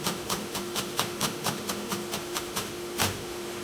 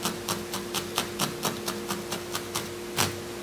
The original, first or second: second